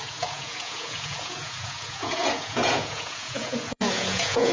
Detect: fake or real fake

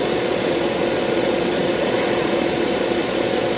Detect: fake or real fake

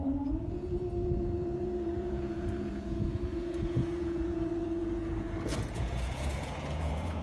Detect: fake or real fake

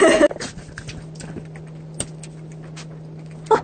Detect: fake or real real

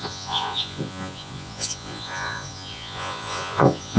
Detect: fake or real fake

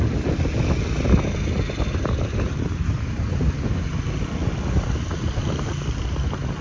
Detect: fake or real real